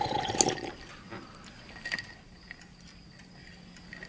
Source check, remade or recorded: recorded